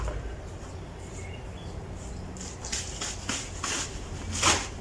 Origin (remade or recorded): recorded